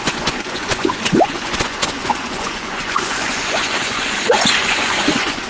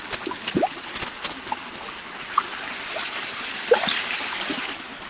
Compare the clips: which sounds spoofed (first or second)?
first